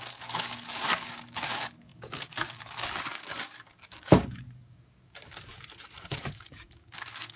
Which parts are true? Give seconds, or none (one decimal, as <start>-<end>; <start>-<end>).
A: 5.5-6.0